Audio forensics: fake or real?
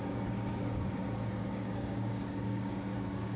fake